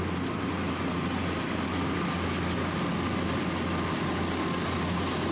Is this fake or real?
real